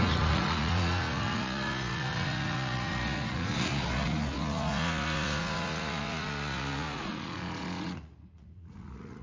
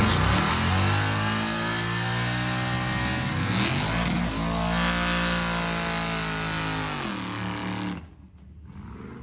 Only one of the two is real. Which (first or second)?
second